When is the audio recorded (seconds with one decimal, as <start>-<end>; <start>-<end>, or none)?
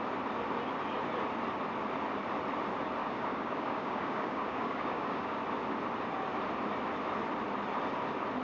0.0-3.0; 5.4-8.4